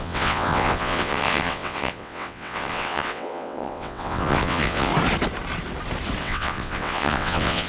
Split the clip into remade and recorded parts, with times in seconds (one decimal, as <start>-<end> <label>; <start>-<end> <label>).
0.0-4.9 remade; 4.9-6.2 recorded; 6.2-7.7 remade